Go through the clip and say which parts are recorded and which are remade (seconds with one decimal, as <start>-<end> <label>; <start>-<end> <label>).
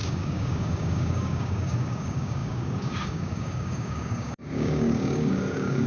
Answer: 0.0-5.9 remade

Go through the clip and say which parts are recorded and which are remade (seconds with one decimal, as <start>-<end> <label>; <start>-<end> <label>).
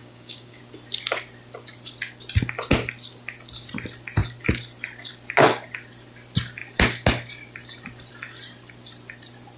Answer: 0.0-0.6 remade; 0.6-9.6 recorded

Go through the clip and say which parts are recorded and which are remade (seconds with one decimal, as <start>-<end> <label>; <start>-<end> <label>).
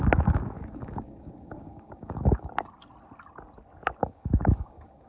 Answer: 0.0-2.5 remade; 2.5-4.0 recorded; 4.0-5.1 remade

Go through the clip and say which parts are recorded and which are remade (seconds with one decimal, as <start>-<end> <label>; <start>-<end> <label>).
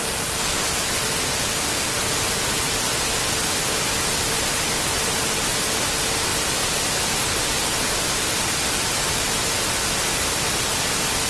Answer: 0.0-11.3 recorded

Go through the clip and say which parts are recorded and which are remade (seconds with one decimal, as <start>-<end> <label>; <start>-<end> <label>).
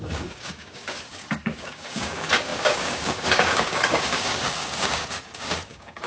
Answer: 0.0-6.1 remade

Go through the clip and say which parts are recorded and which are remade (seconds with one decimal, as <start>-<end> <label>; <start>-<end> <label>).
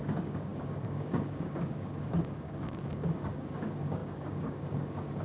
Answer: 0.0-5.2 remade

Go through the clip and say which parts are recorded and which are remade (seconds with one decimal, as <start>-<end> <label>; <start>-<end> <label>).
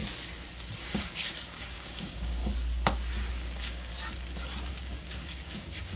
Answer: 0.0-0.8 recorded; 0.8-2.4 remade; 2.4-3.3 recorded; 3.3-3.9 remade; 3.9-4.7 recorded; 4.7-6.0 remade